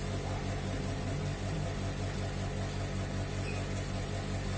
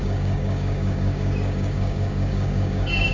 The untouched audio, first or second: first